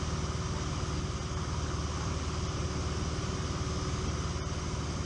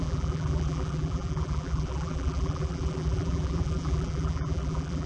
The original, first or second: first